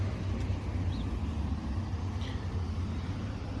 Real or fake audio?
real